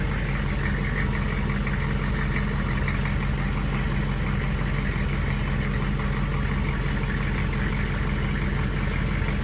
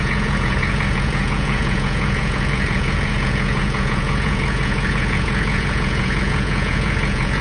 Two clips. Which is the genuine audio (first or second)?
first